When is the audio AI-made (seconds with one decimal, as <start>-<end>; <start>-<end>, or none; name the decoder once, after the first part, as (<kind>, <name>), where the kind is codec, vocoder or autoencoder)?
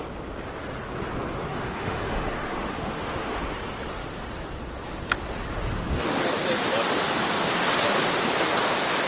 1.5-3.4 (autoencoder, DAC-VAE)